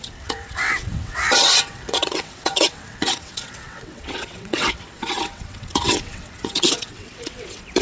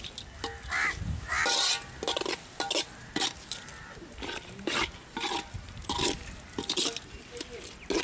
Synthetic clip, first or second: first